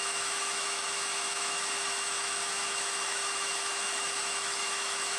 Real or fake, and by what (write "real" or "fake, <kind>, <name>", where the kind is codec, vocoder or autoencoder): fake, autoencoder, DAC-VAE